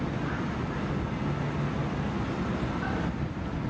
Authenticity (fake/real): real